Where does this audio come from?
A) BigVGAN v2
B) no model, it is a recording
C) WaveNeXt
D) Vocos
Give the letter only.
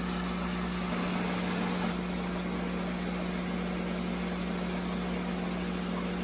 B